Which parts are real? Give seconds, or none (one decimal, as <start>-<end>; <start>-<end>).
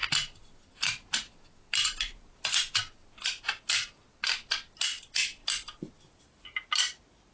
0.0-7.3